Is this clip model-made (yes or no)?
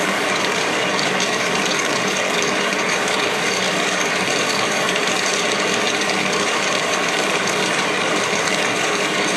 yes